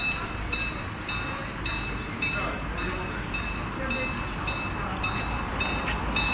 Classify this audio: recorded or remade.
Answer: recorded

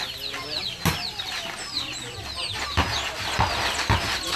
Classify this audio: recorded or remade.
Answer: recorded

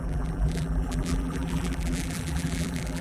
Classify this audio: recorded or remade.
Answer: remade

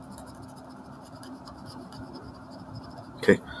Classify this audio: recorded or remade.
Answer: remade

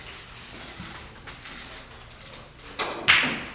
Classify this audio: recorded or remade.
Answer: recorded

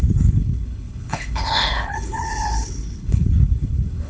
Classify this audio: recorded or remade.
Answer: remade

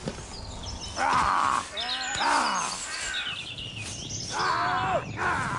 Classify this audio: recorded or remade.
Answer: recorded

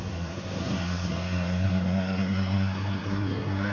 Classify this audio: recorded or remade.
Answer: remade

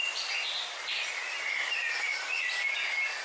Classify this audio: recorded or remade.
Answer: recorded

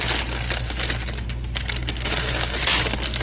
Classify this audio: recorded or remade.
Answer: recorded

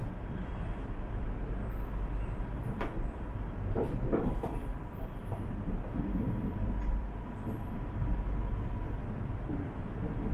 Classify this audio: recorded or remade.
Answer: remade